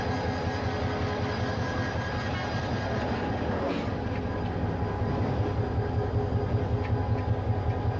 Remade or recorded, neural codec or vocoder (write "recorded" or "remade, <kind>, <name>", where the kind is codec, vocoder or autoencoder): recorded